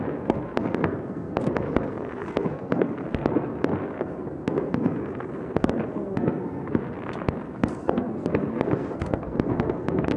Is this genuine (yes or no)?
no